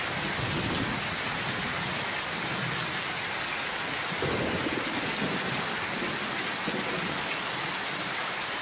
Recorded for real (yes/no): yes